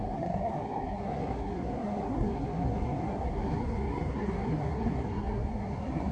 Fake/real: fake